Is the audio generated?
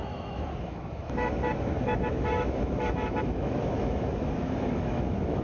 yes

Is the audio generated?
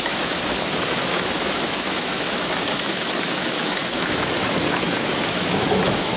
yes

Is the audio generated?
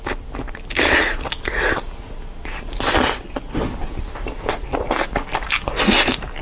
no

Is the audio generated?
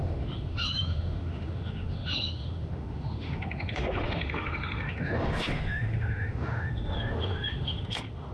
yes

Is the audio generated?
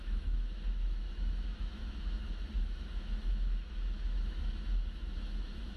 yes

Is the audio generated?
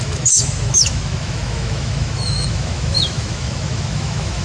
yes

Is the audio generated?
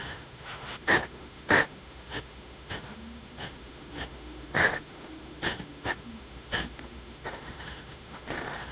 yes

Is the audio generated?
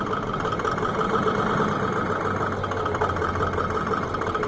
no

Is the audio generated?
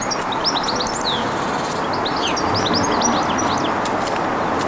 no